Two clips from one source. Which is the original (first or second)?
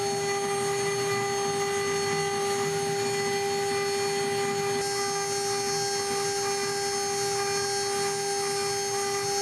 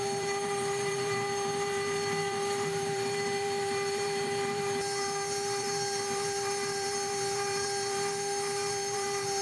first